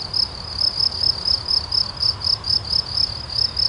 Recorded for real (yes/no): yes